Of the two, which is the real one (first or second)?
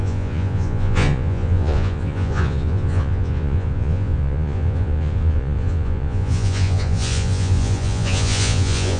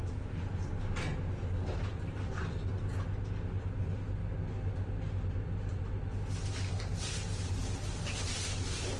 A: second